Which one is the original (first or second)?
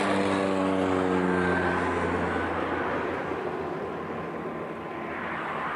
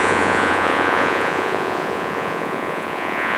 first